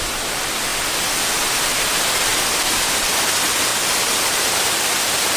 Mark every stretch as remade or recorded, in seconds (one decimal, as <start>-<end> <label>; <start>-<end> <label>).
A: 0.0-0.7 recorded; 0.7-1.2 remade; 1.2-2.3 recorded; 2.3-3.1 remade; 3.1-5.4 recorded

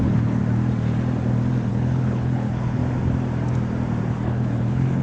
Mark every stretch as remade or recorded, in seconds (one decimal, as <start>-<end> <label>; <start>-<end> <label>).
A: 0.0-0.4 remade; 0.4-1.7 recorded; 1.7-2.8 remade; 2.8-4.1 recorded; 4.1-5.0 remade

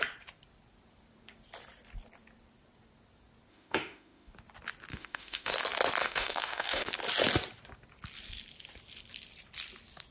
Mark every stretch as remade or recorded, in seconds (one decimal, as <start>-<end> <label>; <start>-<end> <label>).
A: 0.0-3.5 recorded; 3.5-4.3 remade; 4.3-4.9 recorded; 4.9-5.5 remade; 5.5-6.0 recorded; 6.0-6.9 remade; 6.9-10.1 recorded

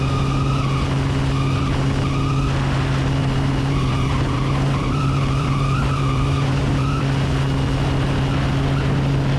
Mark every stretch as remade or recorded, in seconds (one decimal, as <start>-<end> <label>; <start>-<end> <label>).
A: 0.0-3.2 recorded; 3.2-7.0 remade; 7.0-9.4 recorded

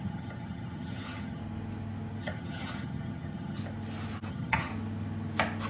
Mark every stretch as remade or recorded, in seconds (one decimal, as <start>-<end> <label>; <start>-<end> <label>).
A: 0.0-1.4 remade; 1.4-2.2 recorded; 2.2-3.6 remade; 3.6-4.3 recorded; 4.3-4.7 remade; 4.7-5.7 recorded

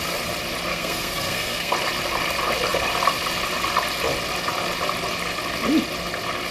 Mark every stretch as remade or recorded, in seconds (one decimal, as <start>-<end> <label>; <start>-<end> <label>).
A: 0.0-0.7 recorded; 0.7-1.7 remade; 1.7-6.5 recorded

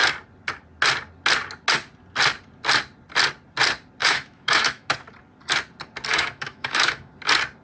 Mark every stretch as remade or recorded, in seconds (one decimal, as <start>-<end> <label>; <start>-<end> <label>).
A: 0.0-4.0 recorded; 4.0-4.9 remade; 4.9-6.1 recorded; 6.1-7.1 remade; 7.1-7.6 recorded

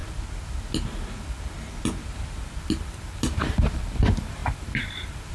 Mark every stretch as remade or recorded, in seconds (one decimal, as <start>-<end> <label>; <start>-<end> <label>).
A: 0.0-2.6 recorded; 2.6-5.3 remade